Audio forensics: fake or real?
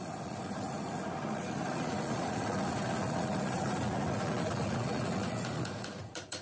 fake